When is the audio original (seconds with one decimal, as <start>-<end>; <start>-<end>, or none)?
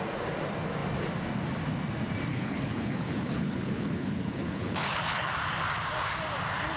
0.0-2.3; 5.3-6.8